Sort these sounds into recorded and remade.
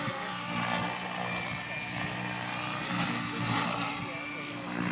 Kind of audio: recorded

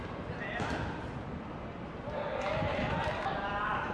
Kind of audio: recorded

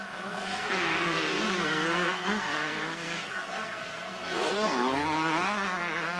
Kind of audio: remade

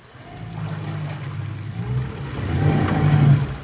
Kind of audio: recorded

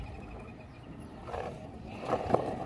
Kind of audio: recorded